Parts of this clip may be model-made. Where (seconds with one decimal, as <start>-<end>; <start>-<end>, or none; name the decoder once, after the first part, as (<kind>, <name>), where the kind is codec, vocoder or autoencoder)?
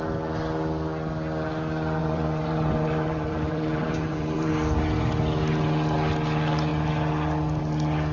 2.0-4.5 (vocoder, BigVGAN v2)